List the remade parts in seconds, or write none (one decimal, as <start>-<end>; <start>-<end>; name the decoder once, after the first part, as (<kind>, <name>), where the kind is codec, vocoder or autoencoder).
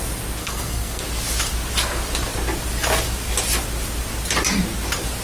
0.4-1.0 (codec, SNAC)